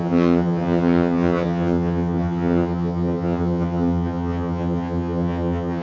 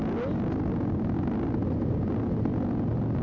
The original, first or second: second